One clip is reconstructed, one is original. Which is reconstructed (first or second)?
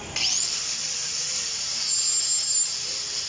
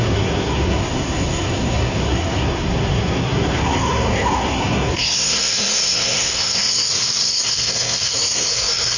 second